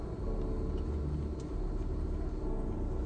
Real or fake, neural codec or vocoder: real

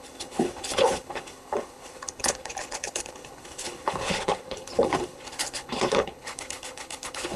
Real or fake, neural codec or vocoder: fake, codec, HILCodec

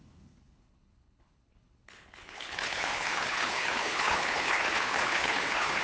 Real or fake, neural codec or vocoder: fake, codec, HILCodec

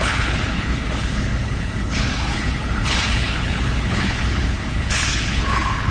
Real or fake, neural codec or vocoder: fake, codec, HILCodec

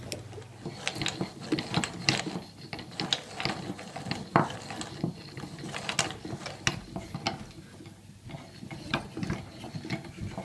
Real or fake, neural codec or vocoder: real